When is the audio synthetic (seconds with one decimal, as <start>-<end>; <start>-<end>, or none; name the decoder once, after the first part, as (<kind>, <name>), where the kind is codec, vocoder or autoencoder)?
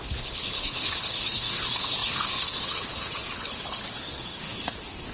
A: 0.0-5.1 (codec, HILCodec)